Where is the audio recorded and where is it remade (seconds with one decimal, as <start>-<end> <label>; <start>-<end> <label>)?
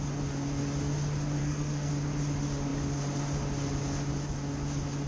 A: 0.0-1.4 recorded; 1.4-1.9 remade; 1.9-5.1 recorded